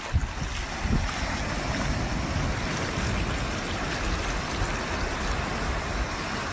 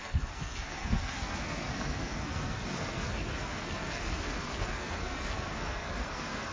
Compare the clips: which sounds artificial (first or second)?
second